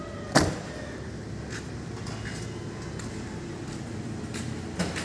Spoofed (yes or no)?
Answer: no